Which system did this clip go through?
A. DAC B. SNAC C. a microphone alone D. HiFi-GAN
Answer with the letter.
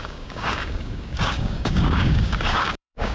A